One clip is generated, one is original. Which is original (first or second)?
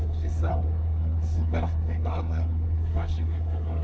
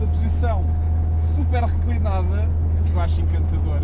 second